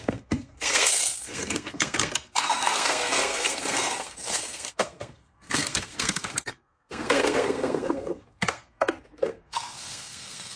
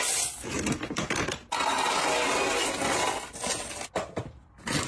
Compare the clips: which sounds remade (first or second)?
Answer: first